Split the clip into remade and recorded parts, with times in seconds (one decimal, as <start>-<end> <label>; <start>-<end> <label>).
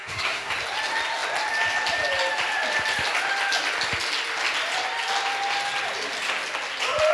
0.0-0.5 remade; 0.5-7.1 recorded